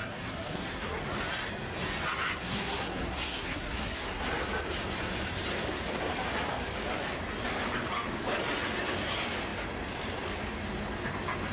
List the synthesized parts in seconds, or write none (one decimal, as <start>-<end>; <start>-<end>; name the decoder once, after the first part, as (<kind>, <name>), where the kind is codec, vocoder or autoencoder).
0.0-1.0 (codec, SNAC); 2.3-4.3